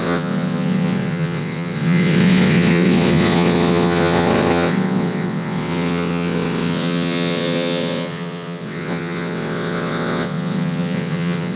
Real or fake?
fake